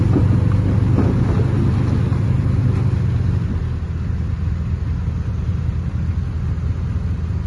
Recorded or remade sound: recorded